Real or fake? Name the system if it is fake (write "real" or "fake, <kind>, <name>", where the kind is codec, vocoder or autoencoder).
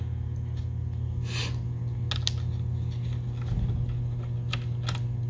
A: real